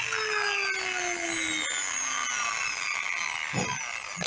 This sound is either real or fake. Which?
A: real